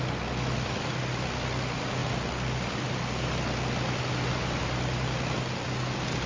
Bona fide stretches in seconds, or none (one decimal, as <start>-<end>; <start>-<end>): 0.0-6.3